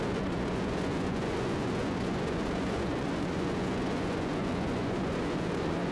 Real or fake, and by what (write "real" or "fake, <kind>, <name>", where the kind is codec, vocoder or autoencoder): fake, vocoder, Vocos